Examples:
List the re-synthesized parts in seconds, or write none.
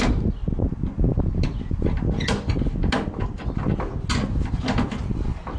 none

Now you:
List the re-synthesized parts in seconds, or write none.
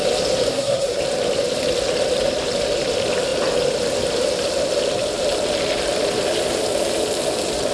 0.5-1.0 (codec, SNAC)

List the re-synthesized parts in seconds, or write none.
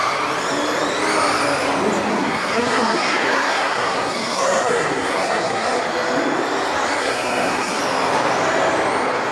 2.1-5.8 (codec, SNAC); 7.0-7.8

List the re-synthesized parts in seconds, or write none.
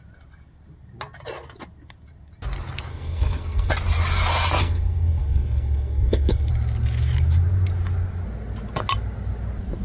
2.9-3.7 (codec, SNAC); 4.6-6.5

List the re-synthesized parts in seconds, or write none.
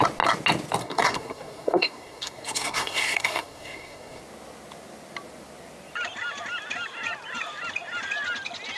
0.8-4.2 (codec, SNAC)